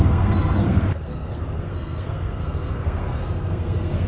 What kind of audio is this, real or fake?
fake